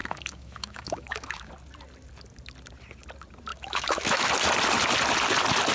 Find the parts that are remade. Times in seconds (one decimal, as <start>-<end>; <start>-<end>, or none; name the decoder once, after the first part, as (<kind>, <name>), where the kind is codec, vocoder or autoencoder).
0.0-1.5 (autoencoder, DAC-VAE); 3.5-4.3

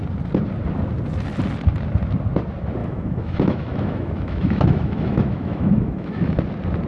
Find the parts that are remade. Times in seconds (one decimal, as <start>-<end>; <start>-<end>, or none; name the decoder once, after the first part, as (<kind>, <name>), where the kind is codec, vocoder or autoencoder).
2.8-6.4 (autoencoder, DAC-VAE)